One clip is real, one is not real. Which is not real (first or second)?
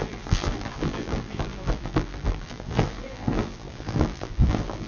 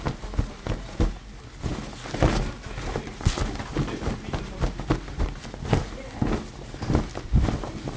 first